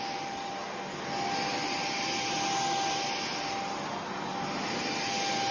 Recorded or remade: recorded